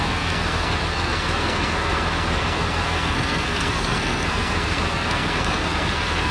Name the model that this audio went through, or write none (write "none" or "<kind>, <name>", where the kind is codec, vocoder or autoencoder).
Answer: codec, SNAC